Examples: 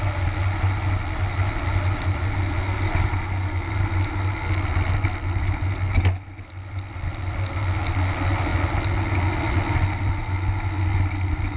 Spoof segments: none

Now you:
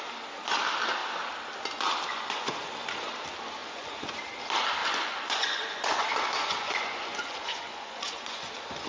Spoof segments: 2.1-2.7; 3.6-4.2; 4.8-8.5

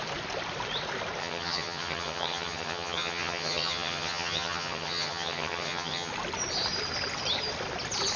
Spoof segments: 1.2-6.1

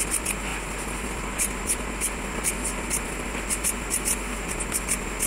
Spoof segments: none

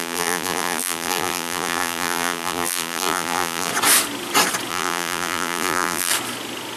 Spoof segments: 0.0-3.7; 4.7-6.1

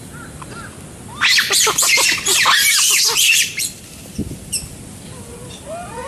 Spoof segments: 2.3-5.0

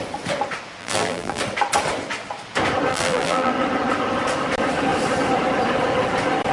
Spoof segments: 0.8-1.4; 2.9-3.5